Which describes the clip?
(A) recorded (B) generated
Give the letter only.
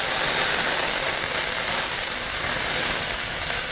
A